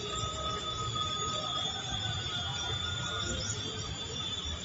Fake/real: real